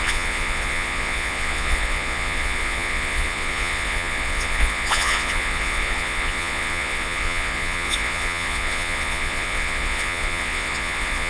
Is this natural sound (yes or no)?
no